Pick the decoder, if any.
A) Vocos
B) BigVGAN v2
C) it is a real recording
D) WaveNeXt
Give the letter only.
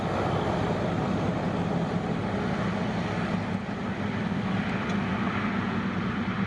C